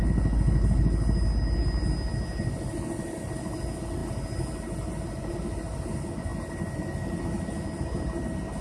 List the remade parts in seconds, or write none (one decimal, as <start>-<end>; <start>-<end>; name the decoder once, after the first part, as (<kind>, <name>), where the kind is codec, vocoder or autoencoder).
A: none